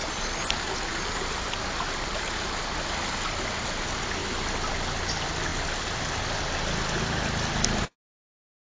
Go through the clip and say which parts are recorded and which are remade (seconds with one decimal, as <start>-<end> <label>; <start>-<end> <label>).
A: 0.0-8.8 recorded